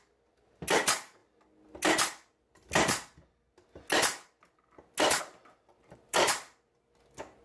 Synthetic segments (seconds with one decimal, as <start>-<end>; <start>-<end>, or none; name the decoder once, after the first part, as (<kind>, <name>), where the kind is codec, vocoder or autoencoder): 5.7-6.3 (vocoder, BigVGAN v2)